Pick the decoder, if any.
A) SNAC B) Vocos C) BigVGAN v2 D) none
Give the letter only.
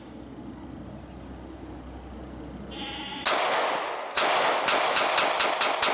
D